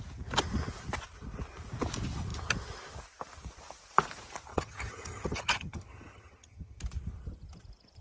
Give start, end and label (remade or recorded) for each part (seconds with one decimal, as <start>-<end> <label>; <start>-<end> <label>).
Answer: 0.0-4.5 recorded; 4.5-6.8 remade; 6.8-8.0 recorded